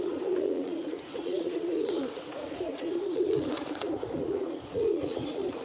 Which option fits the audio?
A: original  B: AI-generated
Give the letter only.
B